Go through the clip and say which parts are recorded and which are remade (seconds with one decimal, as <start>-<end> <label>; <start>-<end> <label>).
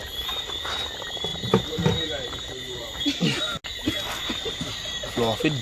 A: 0.0-1.3 recorded; 1.3-3.4 remade; 3.4-3.8 recorded; 3.8-4.6 remade; 4.6-5.6 recorded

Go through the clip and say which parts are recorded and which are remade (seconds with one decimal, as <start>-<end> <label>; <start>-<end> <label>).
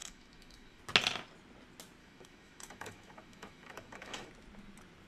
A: 0.0-0.8 remade; 0.8-2.0 recorded; 2.0-4.3 remade; 4.3-5.1 recorded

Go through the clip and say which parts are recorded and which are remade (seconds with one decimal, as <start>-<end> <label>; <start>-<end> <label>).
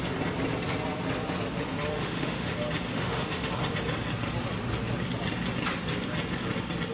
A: 0.0-1.9 recorded; 1.9-2.5 remade; 2.5-2.9 recorded; 2.9-3.5 remade; 3.5-6.9 recorded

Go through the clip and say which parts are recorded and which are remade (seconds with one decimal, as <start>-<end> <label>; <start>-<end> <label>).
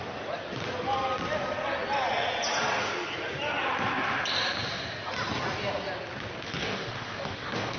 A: 0.0-6.6 recorded; 6.6-7.8 remade